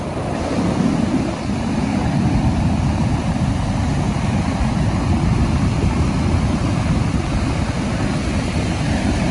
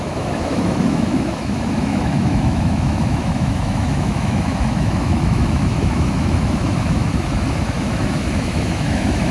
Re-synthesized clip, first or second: second